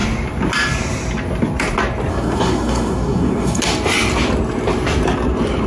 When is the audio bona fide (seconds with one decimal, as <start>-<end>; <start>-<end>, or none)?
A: 0.0-2.1; 3.6-5.7